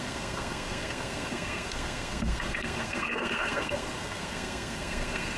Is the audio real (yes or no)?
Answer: no